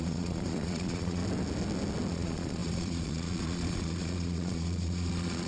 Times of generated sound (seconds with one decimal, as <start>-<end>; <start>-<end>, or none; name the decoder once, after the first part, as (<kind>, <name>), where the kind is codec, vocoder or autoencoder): 0.0-1.2 (vocoder, Vocos); 2.1-5.5